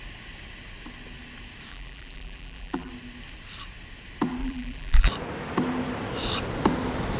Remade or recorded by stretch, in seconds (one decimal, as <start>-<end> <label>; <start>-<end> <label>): 0.0-1.7 recorded; 1.7-2.9 remade; 2.9-4.4 recorded; 4.4-5.1 remade; 5.1-7.2 recorded